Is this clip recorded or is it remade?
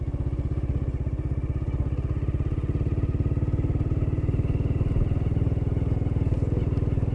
recorded